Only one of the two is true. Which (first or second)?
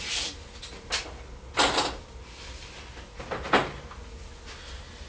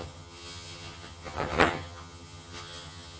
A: first